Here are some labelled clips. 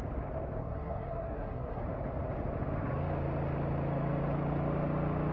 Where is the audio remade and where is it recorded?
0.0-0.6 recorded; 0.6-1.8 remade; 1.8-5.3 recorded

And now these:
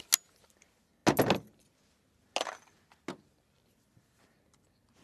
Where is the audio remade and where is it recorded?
0.0-5.0 recorded

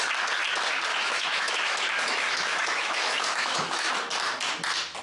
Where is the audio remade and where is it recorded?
0.0-0.9 recorded; 0.9-3.9 remade; 3.9-5.0 recorded